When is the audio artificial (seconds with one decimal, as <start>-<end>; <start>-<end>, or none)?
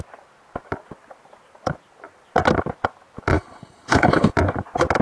3.3-4.3